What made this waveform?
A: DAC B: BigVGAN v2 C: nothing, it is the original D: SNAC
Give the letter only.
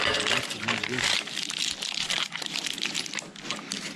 C